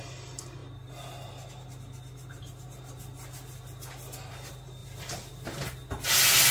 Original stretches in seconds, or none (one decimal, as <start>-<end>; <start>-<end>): 0.0-4.8; 5.3-6.5